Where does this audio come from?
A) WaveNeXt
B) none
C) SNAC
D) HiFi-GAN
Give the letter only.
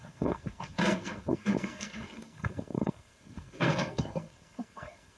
C